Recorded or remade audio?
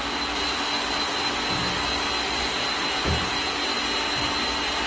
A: recorded